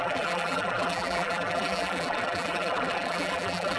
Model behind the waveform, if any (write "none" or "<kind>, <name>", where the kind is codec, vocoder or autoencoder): vocoder, BigVGAN v2